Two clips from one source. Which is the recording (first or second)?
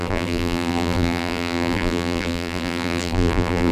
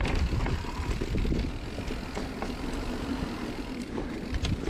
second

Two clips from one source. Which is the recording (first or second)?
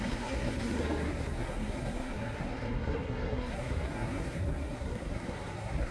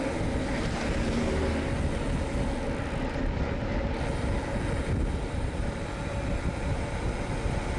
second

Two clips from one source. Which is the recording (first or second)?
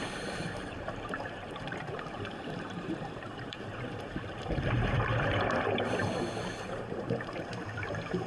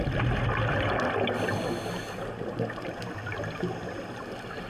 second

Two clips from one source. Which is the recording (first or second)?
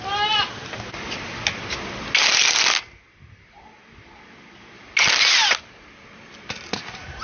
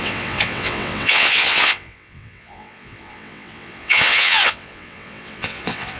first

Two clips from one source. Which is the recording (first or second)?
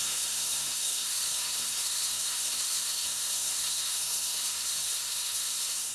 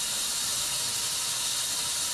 second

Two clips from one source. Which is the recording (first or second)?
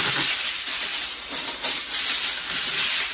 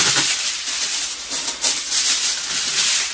second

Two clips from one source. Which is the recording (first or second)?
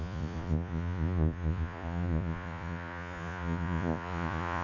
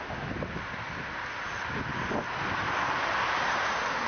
second